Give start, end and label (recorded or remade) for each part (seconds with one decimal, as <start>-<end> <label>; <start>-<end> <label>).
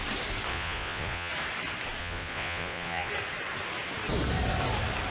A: 0.0-0.5 recorded; 0.5-1.3 remade; 1.3-2.0 recorded; 2.0-3.1 remade; 3.1-5.1 recorded